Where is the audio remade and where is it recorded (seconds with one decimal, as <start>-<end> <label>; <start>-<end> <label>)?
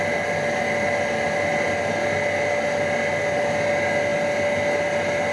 0.0-5.3 recorded